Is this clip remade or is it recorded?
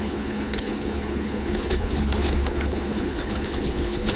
remade